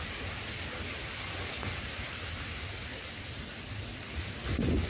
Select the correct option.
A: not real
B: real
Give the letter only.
B